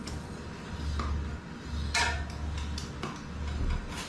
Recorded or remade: recorded